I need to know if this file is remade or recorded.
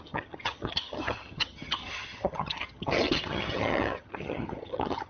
remade